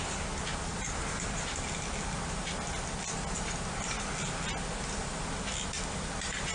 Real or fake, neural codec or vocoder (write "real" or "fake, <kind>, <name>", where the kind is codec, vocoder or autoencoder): real